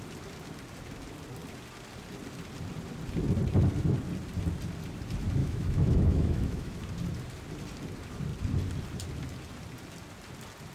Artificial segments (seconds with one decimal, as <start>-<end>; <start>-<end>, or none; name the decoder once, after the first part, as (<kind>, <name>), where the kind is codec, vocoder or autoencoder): 5.4-6.8 (autoencoder, DAC-VAE)